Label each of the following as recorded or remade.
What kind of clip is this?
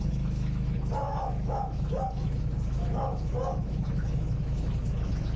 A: remade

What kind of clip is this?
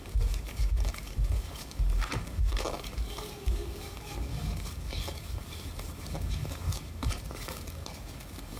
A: remade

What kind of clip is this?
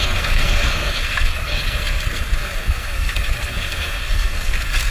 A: remade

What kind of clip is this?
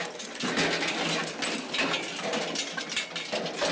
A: recorded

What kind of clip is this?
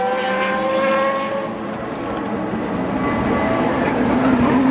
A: recorded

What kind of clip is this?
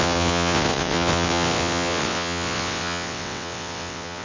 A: remade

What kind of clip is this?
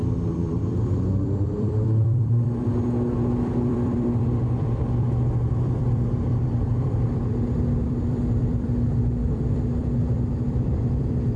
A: remade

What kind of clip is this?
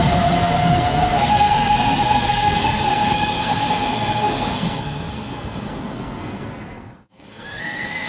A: remade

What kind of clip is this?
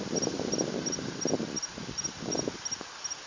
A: recorded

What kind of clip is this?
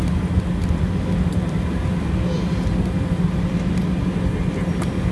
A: recorded